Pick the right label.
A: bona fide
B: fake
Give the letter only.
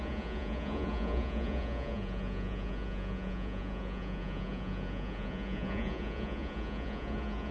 B